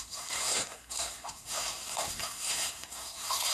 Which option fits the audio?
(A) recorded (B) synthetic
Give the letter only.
B